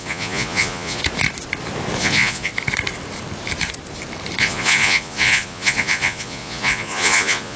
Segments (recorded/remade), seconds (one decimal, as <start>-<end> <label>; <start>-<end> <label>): 0.0-1.0 remade; 1.0-2.0 recorded; 2.0-2.5 remade; 2.5-4.4 recorded; 4.4-7.6 remade